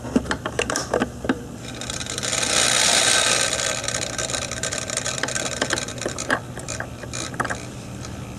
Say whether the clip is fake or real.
fake